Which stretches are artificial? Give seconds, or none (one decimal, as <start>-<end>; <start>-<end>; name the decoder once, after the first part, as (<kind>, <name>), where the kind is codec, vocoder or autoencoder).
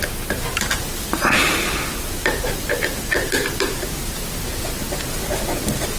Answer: 2.2-5.0 (vocoder, BigVGAN v2)